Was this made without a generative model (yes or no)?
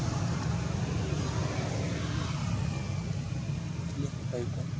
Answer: yes